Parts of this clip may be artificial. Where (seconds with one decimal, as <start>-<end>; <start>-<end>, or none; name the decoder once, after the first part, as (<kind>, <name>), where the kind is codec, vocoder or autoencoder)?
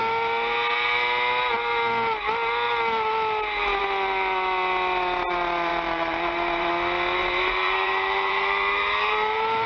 5.7-6.7 (vocoder, BigVGAN v2); 7.2-9.7